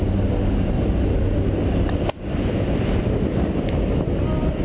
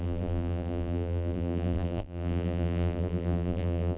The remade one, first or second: second